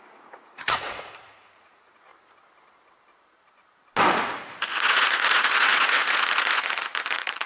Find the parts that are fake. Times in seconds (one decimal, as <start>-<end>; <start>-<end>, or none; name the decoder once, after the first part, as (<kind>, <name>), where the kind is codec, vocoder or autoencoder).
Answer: 0.0-2.1 (vocoder, Vocos); 4.6-7.5